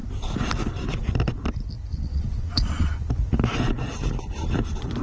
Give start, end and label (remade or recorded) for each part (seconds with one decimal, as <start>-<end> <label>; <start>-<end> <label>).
0.0-1.9 recorded; 1.9-3.0 remade; 3.0-5.0 recorded